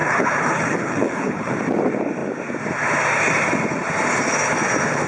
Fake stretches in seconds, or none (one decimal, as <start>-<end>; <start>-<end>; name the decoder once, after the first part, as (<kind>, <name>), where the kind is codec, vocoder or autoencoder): 0.0-1.5 (codec, HILCodec)